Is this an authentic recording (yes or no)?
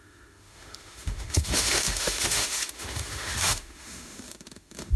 no